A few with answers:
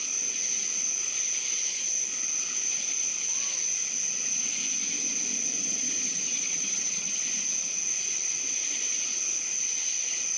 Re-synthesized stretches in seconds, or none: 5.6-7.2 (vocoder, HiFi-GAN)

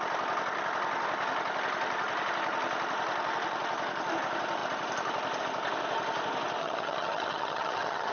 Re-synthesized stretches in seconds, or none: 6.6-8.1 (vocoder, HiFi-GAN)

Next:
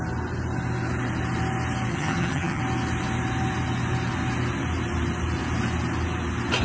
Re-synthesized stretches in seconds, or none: 1.9-2.6 (vocoder, HiFi-GAN)

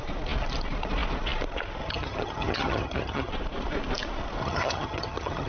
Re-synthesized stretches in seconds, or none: 1.8-3.3 (vocoder, HiFi-GAN); 4.4-5.5

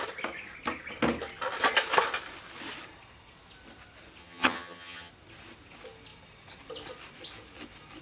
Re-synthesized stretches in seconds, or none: 4.2-5.1 (vocoder, HiFi-GAN)

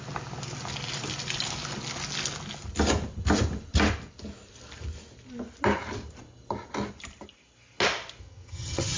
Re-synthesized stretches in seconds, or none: 8.2-9.0 (vocoder, HiFi-GAN)

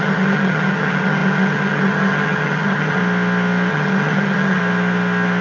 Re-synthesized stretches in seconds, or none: 0.0-3.0 (vocoder, HiFi-GAN); 3.7-4.6

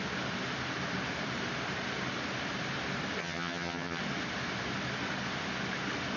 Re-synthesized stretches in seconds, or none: 3.2-4.0 (vocoder, HiFi-GAN)